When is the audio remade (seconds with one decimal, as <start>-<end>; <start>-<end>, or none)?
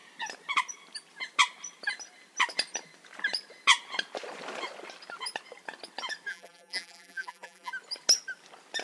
6.3-7.7